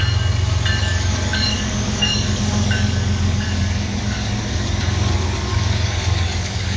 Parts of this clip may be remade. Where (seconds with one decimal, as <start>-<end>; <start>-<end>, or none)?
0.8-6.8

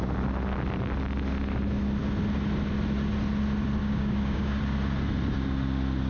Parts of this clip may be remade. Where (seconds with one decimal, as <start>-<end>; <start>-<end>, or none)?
3.8-4.6

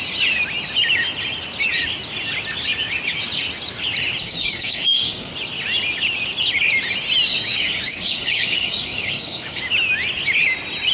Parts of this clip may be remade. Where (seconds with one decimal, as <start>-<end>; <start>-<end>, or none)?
4.2-5.3; 7.3-9.6

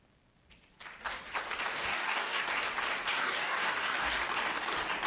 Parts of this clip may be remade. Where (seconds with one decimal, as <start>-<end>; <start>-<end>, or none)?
1.8-2.4; 3.1-4.1

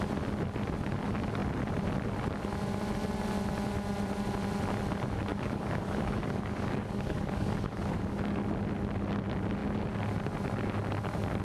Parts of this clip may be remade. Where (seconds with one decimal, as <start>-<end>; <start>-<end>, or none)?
5.3-8.4

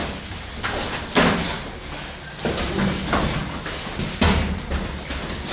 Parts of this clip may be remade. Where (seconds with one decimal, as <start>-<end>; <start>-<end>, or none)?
none